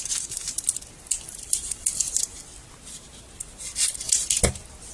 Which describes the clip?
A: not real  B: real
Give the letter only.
B